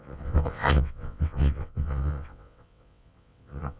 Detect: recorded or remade remade